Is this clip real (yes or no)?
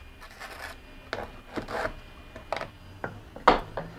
yes